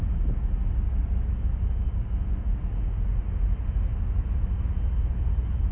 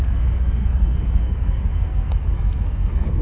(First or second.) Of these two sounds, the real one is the first